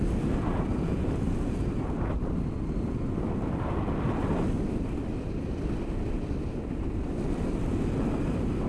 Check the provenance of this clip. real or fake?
real